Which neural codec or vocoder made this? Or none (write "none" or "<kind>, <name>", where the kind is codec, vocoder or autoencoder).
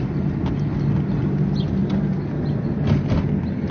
none